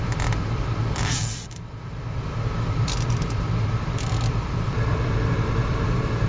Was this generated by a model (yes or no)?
yes